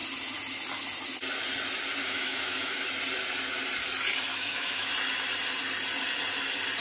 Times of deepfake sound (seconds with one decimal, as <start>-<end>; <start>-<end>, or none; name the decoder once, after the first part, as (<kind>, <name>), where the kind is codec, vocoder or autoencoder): 2.0-2.9 (autoencoder, DAC-VAE); 4.3-4.9